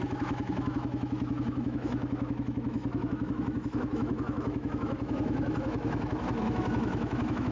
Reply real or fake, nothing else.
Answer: fake